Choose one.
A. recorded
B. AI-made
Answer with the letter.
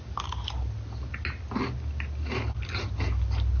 A